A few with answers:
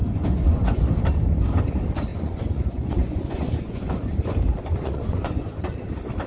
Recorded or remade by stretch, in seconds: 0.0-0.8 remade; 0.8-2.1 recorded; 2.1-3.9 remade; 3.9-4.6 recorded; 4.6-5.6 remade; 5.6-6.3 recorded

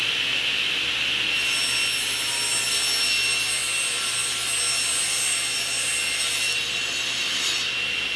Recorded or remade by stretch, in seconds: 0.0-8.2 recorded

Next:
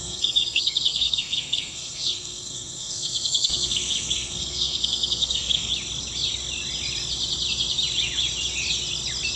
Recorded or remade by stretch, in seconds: 0.0-5.7 remade; 5.7-9.4 recorded

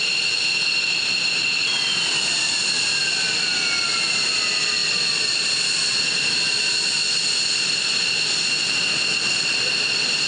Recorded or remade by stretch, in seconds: 0.0-10.3 recorded